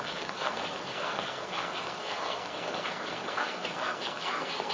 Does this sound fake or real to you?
fake